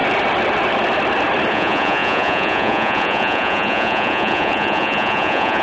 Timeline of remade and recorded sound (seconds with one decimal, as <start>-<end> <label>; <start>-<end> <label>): 0.0-1.5 recorded; 1.5-5.6 remade